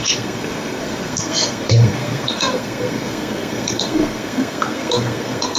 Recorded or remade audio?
remade